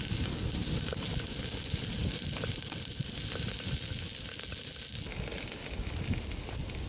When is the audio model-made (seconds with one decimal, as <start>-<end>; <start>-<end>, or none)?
none